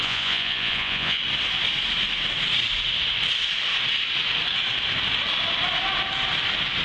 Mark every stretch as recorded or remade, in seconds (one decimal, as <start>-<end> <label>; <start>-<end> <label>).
0.0-1.2 remade; 1.2-6.8 recorded